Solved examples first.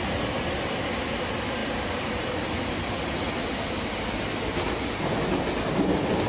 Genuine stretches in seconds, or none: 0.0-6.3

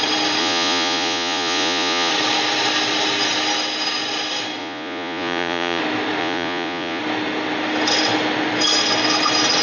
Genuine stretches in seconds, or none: 0.0-0.4; 2.1-4.6; 5.8-6.2; 7.0-9.6

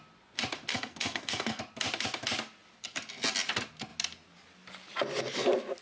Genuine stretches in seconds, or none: 0.0-0.7; 1.6-5.8

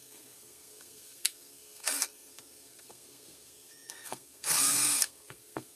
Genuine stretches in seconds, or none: none

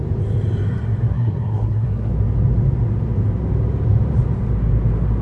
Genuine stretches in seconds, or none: 0.0-1.1; 2.1-5.2

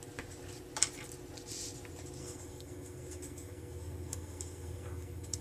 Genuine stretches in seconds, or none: 0.0-2.2

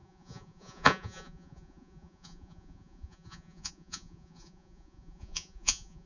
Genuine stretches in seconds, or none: none

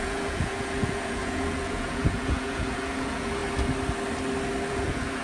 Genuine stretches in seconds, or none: 3.4-4.7